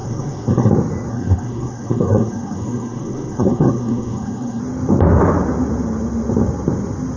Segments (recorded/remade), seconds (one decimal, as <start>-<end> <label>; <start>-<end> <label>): 0.0-0.7 remade; 0.7-1.1 recorded; 1.1-4.6 remade; 4.6-7.2 recorded